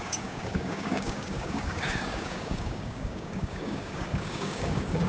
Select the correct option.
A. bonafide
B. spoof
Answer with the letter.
B